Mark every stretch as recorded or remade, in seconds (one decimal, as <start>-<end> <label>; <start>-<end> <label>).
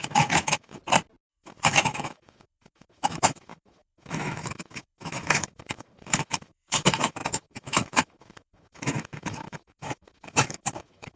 0.0-0.8 remade; 0.8-1.3 recorded; 1.3-11.2 remade